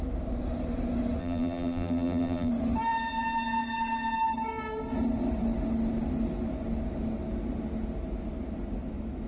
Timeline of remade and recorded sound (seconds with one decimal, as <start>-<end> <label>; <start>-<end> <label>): 0.0-1.2 recorded; 1.2-2.5 remade; 2.5-9.3 recorded